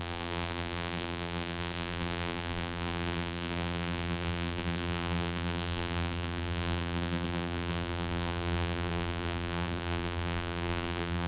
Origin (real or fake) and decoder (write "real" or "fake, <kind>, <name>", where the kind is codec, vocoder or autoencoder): fake, vocoder, BigVGAN v2